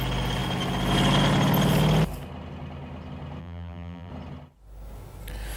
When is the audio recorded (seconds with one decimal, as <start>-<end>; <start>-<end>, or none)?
0.0-3.4; 4.1-5.6